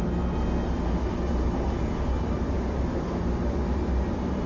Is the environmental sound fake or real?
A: real